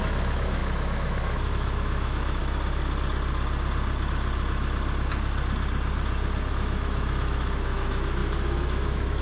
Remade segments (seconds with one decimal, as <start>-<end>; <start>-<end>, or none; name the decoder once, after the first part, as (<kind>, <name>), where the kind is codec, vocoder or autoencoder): 0.0-2.4 (autoencoder, DAC-VAE); 6.5-9.2